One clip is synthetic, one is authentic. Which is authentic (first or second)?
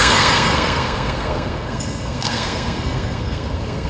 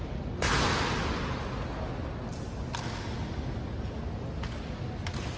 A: second